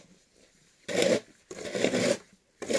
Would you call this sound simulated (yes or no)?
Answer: no